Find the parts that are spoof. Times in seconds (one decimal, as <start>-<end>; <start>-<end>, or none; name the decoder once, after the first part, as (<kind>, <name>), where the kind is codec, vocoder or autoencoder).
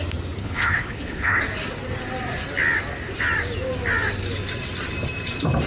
0.4-1.4 (codec, HILCodec)